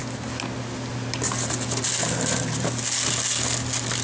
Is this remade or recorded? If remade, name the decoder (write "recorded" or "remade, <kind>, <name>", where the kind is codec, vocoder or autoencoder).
recorded